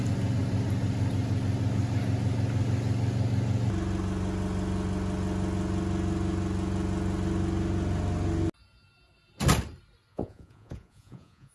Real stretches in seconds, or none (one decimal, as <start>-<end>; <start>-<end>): 0.0-10.1